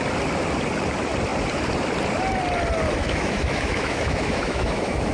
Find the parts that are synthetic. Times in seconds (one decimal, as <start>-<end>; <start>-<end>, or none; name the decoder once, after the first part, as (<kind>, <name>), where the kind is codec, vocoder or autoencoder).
3.0-5.1 (autoencoder, DAC-VAE)